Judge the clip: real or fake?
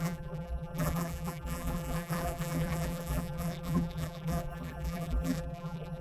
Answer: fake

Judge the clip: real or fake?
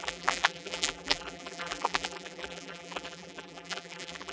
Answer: fake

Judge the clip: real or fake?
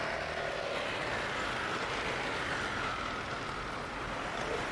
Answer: real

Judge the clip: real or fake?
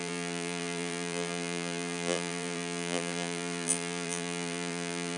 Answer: fake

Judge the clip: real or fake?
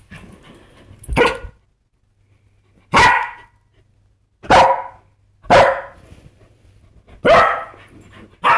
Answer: real